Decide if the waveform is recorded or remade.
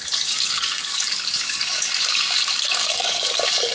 remade